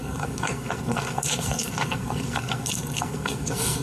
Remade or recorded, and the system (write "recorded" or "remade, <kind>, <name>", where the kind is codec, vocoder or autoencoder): remade, codec, SNAC